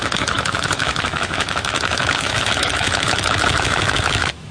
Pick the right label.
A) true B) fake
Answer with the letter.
B